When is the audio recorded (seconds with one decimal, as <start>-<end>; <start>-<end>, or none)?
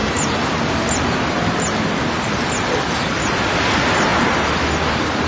0.0-5.3